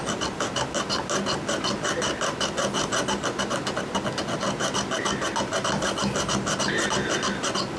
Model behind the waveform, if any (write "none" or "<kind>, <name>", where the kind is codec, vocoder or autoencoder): none